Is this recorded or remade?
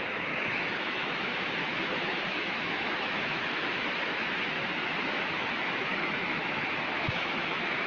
remade